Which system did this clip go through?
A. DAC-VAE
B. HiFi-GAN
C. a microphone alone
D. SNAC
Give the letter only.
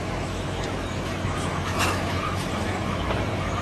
A